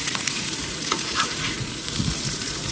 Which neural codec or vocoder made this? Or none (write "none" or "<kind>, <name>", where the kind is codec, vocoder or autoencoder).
vocoder, Vocos